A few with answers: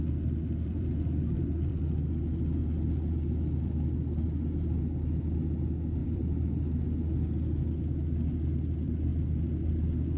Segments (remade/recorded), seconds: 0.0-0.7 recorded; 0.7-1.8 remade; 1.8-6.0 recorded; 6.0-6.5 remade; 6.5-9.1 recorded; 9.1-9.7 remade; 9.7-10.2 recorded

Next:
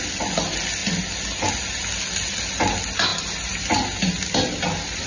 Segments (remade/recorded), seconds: 0.0-5.1 recorded

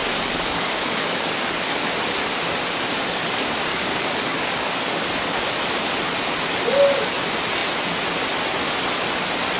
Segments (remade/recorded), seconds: 0.0-1.9 remade; 1.9-3.7 recorded; 3.7-5.4 remade; 5.4-9.6 recorded

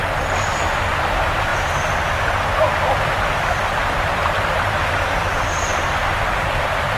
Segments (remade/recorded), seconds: 0.0-0.9 remade; 0.9-1.5 recorded; 1.5-5.1 remade; 5.1-5.7 recorded; 5.7-6.6 remade; 6.6-7.0 recorded